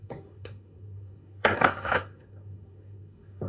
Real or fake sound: fake